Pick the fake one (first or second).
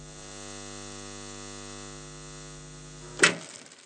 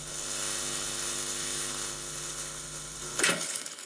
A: second